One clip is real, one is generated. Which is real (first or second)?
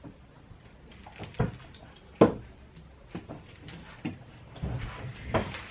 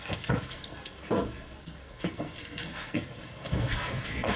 first